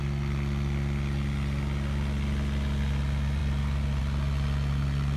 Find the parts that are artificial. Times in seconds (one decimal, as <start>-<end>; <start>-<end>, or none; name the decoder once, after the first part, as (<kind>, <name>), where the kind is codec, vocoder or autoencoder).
none